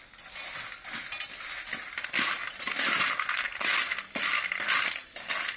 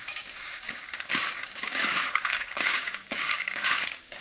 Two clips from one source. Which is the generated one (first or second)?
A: second